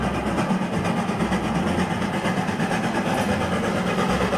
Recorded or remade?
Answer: recorded